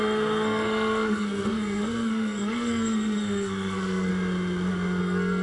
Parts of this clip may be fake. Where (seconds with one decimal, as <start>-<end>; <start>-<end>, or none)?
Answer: 0.0-4.1; 5.0-5.4